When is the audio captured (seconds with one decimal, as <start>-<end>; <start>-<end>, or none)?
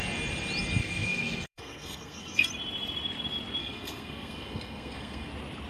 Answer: 0.0-0.8; 2.5-3.6; 5.3-5.7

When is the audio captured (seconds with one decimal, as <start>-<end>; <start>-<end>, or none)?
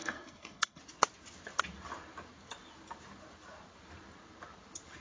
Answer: 0.8-5.0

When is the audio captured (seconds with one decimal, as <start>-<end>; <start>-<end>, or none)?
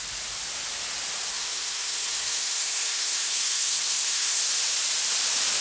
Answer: 0.0-1.3; 4.4-5.6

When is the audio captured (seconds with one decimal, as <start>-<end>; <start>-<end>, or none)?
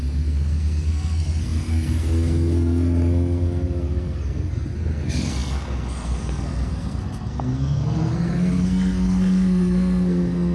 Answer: none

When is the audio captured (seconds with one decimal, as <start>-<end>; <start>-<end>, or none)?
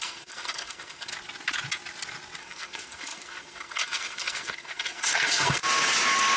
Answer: 1.1-2.4; 5.6-6.4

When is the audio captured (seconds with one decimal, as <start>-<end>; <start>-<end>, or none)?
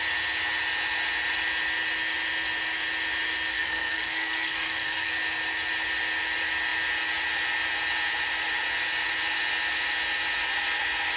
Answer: 0.0-3.5; 5.1-11.2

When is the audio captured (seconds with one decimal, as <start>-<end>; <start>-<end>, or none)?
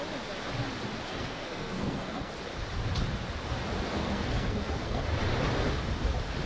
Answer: 0.0-1.1; 2.3-3.9; 5.0-6.5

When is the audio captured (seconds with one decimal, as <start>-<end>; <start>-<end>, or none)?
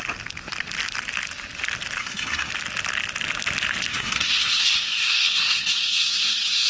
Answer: 0.0-2.0; 2.5-3.9